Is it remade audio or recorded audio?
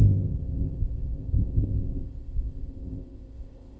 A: remade